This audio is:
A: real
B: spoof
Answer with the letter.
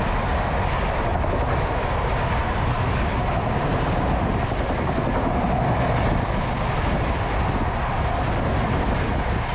A